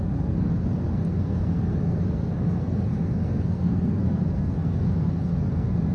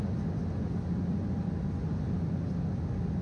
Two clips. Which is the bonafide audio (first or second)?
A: second